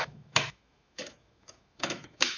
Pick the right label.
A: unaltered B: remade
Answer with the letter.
B